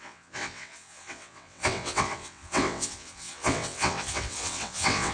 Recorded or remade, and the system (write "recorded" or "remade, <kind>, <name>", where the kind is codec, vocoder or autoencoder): remade, vocoder, WaveNeXt